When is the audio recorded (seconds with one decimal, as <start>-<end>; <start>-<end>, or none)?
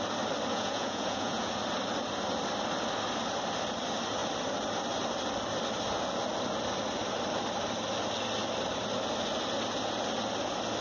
0.0-0.5; 1.5-10.8